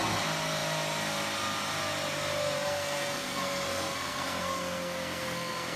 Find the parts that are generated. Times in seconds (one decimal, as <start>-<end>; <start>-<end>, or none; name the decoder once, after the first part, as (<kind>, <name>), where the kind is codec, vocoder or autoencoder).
2.4-5.8 (codec, SNAC)